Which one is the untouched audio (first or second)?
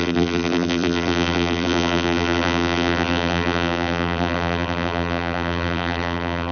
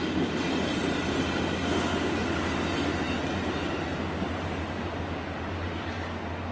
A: second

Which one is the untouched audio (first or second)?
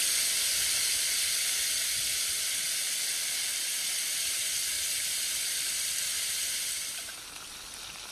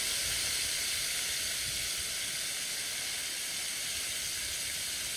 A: second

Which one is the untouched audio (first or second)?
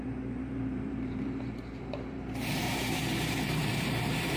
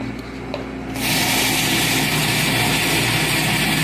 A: second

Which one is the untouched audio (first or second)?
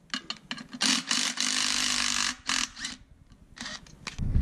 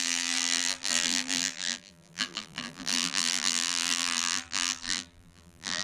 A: first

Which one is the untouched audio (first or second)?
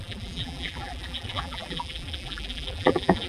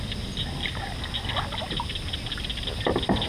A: second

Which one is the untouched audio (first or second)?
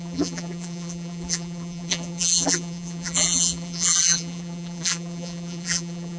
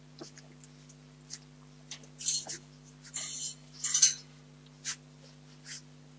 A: second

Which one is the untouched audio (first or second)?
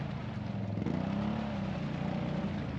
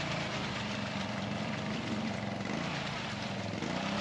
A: first